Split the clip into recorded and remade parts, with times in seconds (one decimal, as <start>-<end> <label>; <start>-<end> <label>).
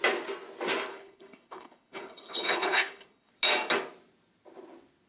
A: 0.0-0.9 recorded; 0.9-3.3 remade; 3.3-5.1 recorded